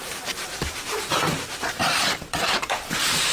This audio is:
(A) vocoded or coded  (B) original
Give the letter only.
A